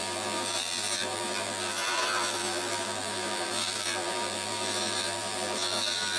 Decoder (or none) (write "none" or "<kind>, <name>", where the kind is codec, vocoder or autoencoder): vocoder, BigVGAN v2